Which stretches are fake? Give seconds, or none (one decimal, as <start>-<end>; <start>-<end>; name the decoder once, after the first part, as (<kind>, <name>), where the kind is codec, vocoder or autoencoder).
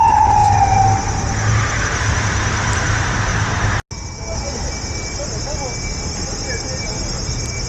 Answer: none